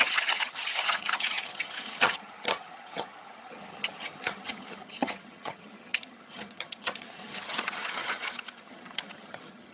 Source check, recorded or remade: remade